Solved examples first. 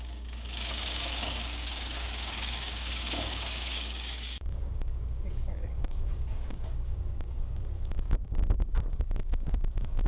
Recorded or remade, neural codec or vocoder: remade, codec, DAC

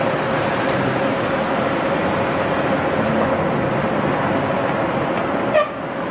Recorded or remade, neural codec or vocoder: recorded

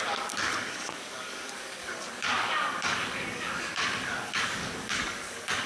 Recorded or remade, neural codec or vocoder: remade, codec, DAC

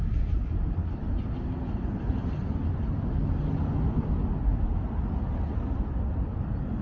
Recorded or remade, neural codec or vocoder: recorded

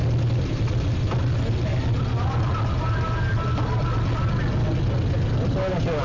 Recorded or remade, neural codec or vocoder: recorded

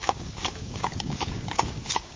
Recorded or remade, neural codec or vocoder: remade, codec, DAC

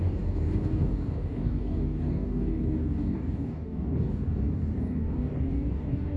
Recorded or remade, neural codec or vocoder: remade, codec, DAC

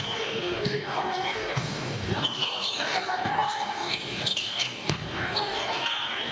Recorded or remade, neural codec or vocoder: remade, codec, DAC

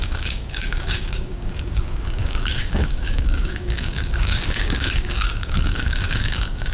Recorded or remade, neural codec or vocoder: remade, codec, DAC